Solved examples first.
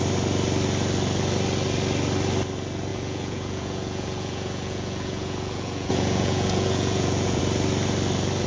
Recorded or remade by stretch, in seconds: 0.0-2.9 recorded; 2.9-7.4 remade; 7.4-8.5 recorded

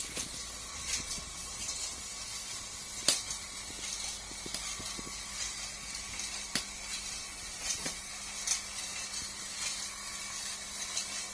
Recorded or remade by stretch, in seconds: 0.0-0.7 recorded; 0.7-2.0 remade; 2.0-7.2 recorded; 7.2-8.1 remade; 8.1-11.3 recorded

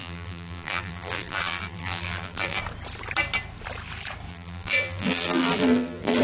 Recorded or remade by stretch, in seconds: 0.0-2.6 remade; 2.6-4.3 recorded; 4.3-6.2 remade